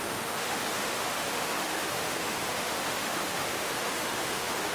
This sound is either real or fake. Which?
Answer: fake